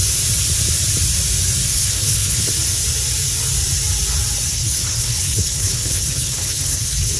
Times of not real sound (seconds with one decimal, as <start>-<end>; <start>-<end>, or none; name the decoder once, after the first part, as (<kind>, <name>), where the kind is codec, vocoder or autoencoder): 1.7-2.5 (codec, HILCodec); 4.5-7.2